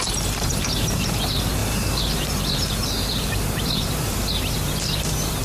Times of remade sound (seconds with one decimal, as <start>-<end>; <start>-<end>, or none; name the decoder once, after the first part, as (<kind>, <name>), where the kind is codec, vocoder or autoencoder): 0.0-5.4 (vocoder, BigVGAN v2)